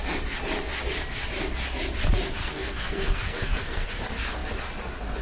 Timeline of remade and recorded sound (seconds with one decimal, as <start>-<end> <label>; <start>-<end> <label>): 0.0-2.4 recorded; 2.4-3.9 remade; 3.9-5.2 recorded